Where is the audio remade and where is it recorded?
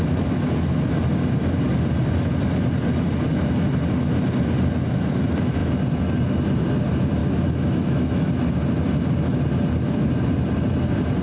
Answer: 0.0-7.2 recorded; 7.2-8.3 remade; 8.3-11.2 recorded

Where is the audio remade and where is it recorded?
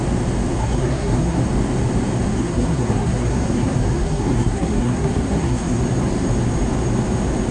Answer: 0.0-0.6 recorded; 0.6-1.4 remade; 1.4-2.3 recorded; 2.3-5.8 remade; 5.8-7.5 recorded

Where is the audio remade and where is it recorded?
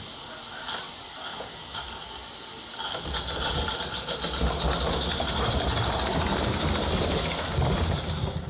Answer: 0.0-1.3 recorded; 1.3-1.8 remade; 1.8-8.5 recorded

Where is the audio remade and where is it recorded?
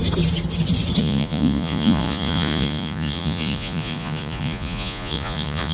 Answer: 0.0-1.0 recorded; 1.0-5.7 remade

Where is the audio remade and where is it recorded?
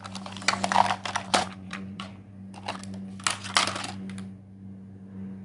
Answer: 0.0-1.3 recorded; 1.3-2.1 remade; 2.1-5.4 recorded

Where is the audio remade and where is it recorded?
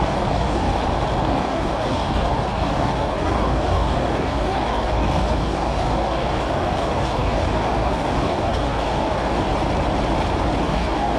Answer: 0.0-0.7 remade; 0.7-1.2 recorded; 1.2-9.5 remade; 9.5-10.6 recorded; 10.6-11.2 remade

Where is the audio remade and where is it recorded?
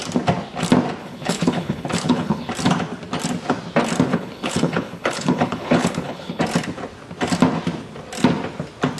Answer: 0.0-1.0 recorded; 1.0-2.5 remade; 2.5-4.1 recorded; 4.1-6.4 remade; 6.4-9.0 recorded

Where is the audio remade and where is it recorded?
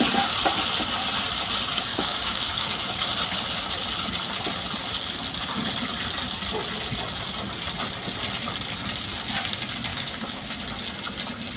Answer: 0.0-1.7 recorded; 1.7-3.1 remade; 3.1-9.9 recorded; 9.9-10.5 remade; 10.5-11.6 recorded